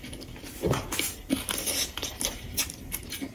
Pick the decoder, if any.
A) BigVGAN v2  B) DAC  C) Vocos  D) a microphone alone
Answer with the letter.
D